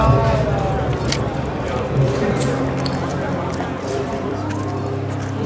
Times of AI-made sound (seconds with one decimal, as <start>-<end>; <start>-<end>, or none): 1.3-2.4; 3.1-4.5